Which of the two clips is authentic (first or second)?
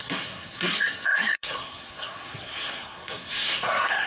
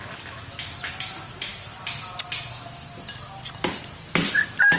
second